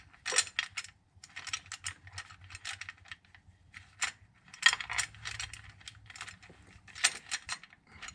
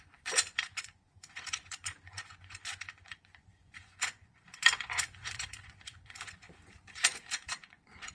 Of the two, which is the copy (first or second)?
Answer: second